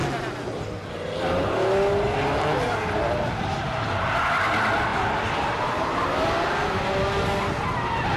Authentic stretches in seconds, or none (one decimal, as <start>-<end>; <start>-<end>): 0.0-4.9; 6.0-8.2